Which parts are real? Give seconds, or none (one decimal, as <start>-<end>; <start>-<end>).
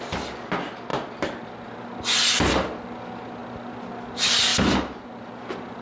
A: 0.0-5.8